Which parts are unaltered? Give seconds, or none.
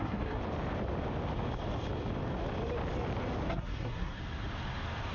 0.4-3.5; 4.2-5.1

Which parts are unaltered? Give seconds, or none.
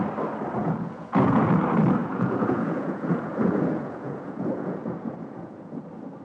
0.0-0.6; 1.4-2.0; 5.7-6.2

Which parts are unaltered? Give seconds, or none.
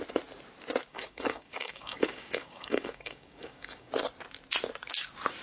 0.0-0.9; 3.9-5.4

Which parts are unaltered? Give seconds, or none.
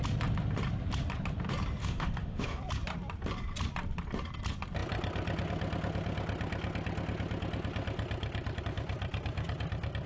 0.0-1.8; 2.6-10.1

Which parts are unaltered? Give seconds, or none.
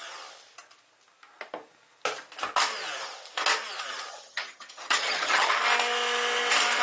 0.0-4.1; 5.5-6.8